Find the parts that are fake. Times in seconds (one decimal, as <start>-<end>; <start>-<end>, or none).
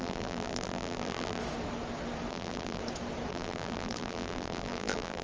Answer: 0.0-1.4; 2.3-2.8; 3.3-5.2